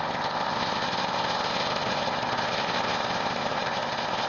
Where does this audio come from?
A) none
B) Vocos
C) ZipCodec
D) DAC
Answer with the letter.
C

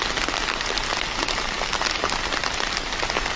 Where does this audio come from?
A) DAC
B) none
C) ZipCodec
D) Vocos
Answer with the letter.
B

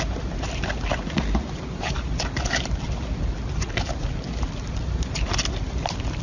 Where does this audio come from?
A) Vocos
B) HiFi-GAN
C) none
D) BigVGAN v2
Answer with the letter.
C